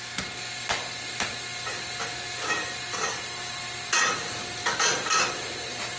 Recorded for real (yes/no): yes